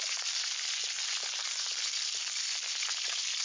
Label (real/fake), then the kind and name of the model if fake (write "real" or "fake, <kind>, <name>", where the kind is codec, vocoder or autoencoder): real